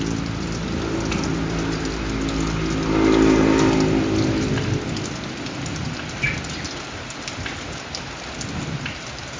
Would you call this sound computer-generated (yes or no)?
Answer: no